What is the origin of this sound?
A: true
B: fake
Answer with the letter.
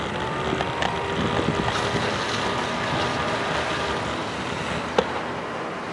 A